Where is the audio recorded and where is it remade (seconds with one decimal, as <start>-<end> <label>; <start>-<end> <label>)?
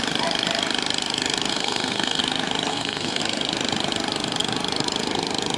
0.0-1.5 recorded; 1.5-2.2 remade; 2.2-2.7 recorded; 2.7-3.2 remade; 3.2-5.6 recorded